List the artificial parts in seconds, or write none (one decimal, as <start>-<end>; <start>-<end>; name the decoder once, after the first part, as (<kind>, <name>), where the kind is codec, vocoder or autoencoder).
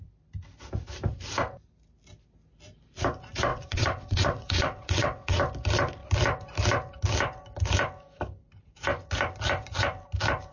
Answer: 3.5-5.4 (vocoder, WaveNeXt)